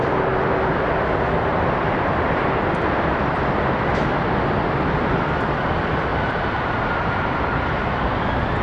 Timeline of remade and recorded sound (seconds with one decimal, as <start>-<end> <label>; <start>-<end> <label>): 0.0-1.5 recorded; 1.5-2.6 remade; 2.6-6.1 recorded; 6.1-8.2 remade; 8.2-8.6 recorded